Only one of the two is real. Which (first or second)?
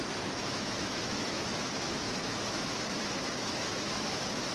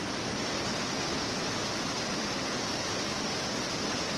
second